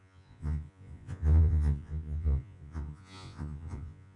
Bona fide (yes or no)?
no